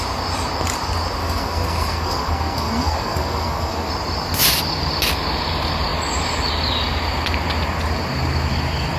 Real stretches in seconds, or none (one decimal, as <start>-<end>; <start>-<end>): 0.0-1.2; 3.9-9.0